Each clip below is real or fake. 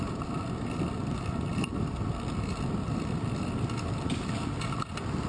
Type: real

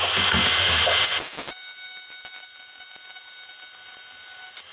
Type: real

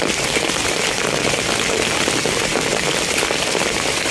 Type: real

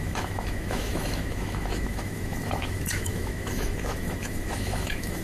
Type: fake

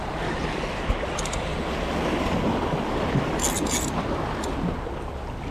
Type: real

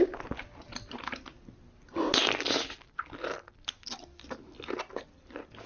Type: real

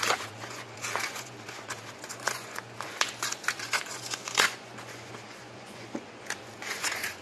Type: fake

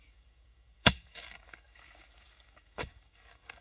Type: fake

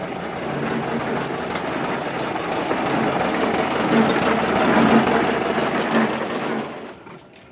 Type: real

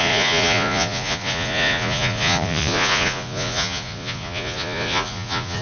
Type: fake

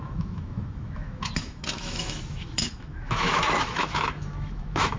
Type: fake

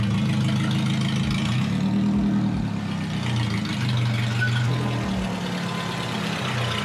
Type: real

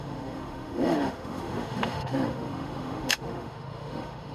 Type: fake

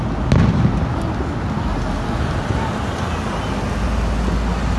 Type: real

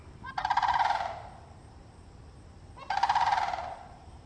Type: real